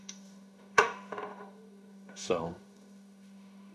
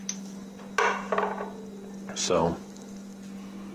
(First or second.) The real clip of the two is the second